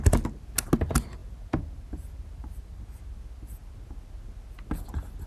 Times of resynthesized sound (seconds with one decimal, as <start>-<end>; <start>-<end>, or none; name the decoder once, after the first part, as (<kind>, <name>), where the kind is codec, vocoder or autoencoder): none